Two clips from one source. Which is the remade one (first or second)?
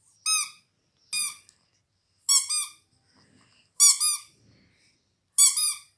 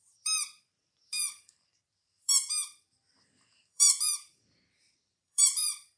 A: second